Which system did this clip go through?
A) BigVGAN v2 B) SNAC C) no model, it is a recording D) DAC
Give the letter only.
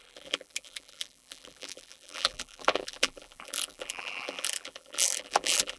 A